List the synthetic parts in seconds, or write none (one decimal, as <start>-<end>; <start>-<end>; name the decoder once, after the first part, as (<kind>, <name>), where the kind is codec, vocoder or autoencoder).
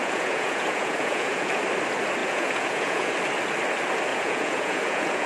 0.0-1.6 (vocoder, Vocos); 2.2-3.1; 4.1-5.3